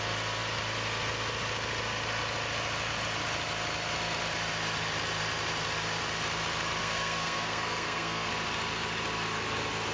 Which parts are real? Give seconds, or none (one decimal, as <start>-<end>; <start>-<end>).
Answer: 0.0-6.8; 8.3-9.9